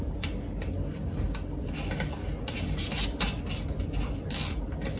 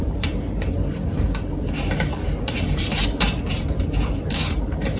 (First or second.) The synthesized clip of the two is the second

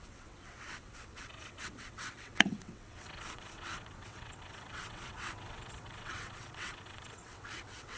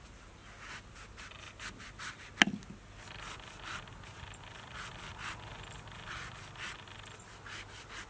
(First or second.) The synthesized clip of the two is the first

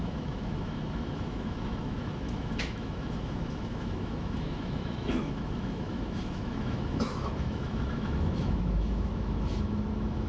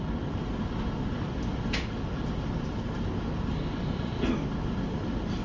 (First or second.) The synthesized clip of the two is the first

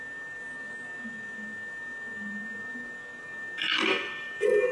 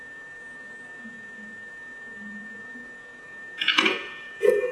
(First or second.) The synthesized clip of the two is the second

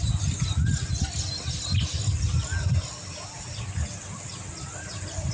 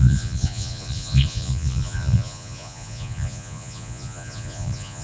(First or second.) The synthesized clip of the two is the second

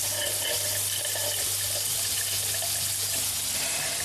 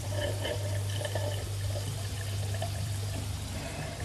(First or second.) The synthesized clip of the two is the second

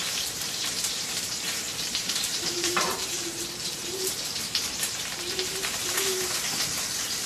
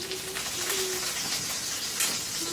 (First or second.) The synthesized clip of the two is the first